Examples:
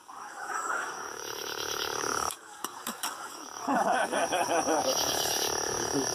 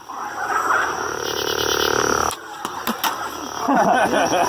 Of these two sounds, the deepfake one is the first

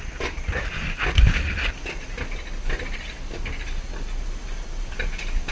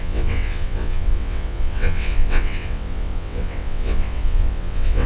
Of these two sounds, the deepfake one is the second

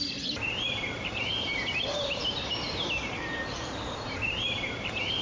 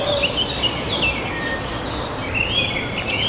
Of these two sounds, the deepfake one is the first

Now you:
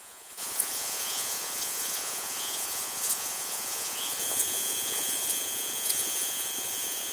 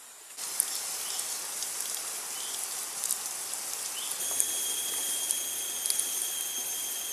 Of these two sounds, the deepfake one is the first